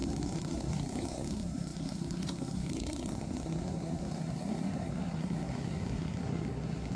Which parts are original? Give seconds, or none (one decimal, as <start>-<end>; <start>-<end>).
none